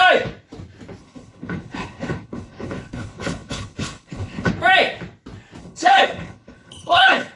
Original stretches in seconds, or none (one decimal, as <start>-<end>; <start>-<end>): 0.0-1.0; 4.5-5.6